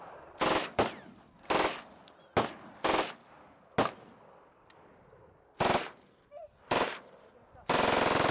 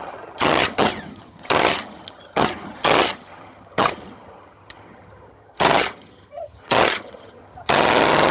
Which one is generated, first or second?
second